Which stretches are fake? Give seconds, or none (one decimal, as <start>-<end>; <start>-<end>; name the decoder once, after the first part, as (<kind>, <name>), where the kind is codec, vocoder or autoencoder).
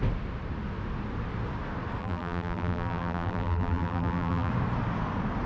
2.0-4.5 (vocoder, BigVGAN v2)